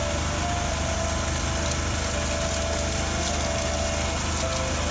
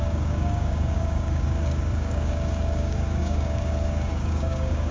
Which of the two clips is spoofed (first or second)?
second